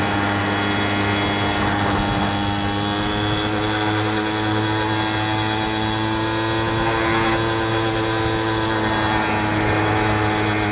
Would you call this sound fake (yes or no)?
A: no